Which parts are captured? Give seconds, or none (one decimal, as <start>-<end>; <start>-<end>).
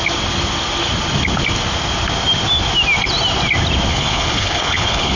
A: 0.0-3.9